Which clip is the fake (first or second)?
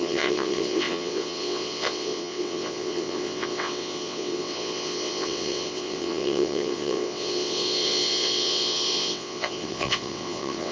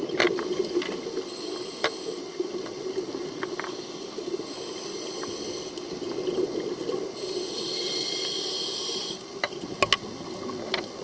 first